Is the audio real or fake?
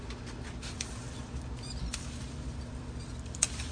fake